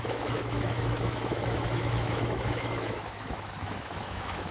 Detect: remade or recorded remade